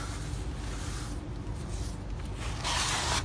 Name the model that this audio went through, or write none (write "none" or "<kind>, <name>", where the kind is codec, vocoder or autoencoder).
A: none